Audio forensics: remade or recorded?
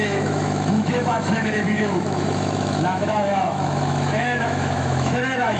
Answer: remade